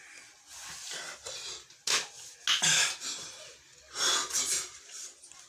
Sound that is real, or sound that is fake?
real